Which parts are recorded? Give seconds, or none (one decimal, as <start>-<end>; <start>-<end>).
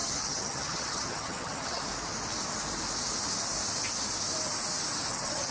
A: 1.9-5.1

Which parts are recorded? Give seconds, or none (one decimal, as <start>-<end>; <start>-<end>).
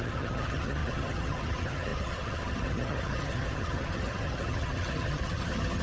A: none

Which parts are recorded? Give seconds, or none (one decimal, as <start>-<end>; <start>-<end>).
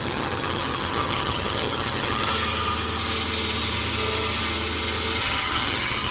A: 2.3-5.2